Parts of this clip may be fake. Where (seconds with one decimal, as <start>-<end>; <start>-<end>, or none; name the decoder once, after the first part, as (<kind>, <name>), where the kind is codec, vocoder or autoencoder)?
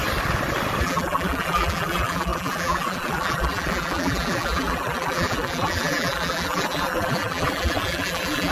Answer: 0.8-8.5 (vocoder, BigVGAN v2)